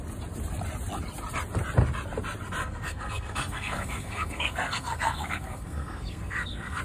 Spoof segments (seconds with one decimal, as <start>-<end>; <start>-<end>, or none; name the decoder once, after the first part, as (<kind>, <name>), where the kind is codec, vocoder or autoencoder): 2.6-6.8 (codec, SNAC)